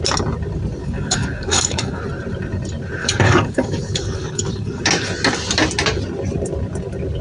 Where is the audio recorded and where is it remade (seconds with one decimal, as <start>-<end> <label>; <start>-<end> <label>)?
0.0-0.8 recorded; 0.8-2.0 remade; 2.0-3.0 recorded; 3.0-4.8 remade; 4.8-7.2 recorded